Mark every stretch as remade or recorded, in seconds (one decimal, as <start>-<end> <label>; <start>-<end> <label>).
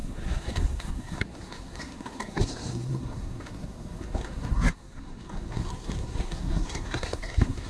0.0-7.7 remade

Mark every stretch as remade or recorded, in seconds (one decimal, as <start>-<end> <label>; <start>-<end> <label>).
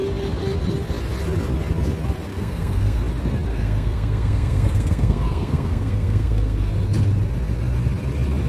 0.0-2.3 recorded; 2.3-3.0 remade; 3.0-3.5 recorded; 3.5-6.7 remade; 6.7-8.5 recorded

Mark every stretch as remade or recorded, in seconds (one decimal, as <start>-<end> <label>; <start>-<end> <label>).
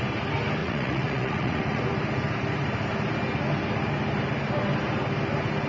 0.0-0.6 recorded; 0.6-1.8 remade; 1.8-5.7 recorded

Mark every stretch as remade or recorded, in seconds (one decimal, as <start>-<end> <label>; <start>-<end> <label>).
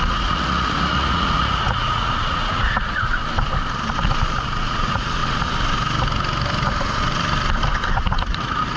0.0-3.2 remade; 3.2-4.6 recorded; 4.6-5.2 remade; 5.2-7.9 recorded; 7.9-8.8 remade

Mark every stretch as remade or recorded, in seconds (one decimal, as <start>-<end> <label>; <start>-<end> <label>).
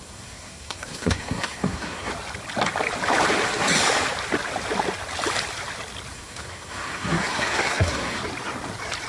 0.0-2.1 remade; 2.1-6.1 recorded; 6.1-8.2 remade; 8.2-9.1 recorded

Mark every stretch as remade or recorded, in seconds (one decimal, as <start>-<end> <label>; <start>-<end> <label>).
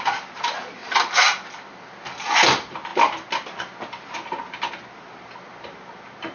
0.0-6.3 recorded